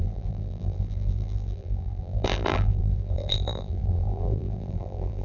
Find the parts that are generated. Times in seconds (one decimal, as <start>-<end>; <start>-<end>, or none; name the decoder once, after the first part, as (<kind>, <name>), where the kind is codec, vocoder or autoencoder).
0.0-5.2 (vocoder, BigVGAN v2)